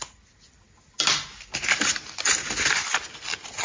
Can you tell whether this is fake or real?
real